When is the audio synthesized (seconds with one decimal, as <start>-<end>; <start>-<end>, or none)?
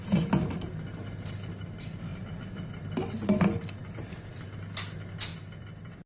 none